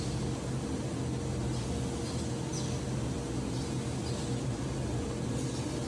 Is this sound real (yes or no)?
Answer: yes